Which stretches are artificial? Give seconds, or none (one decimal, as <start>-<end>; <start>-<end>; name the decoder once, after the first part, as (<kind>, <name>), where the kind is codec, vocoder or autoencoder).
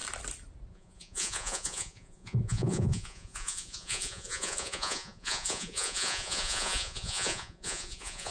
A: 0.7-8.3 (vocoder, Vocos)